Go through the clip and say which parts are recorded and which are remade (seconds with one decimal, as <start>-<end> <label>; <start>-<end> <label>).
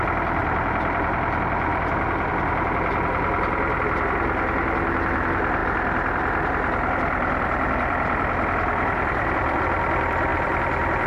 0.0-0.4 recorded; 0.4-1.1 remade; 1.1-5.6 recorded; 5.6-9.6 remade; 9.6-10.3 recorded; 10.3-11.1 remade